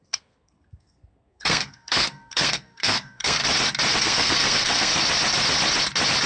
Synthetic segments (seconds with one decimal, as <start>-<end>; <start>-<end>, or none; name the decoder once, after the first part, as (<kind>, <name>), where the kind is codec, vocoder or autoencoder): 0.0-3.4 (codec, SNAC); 4.0-4.9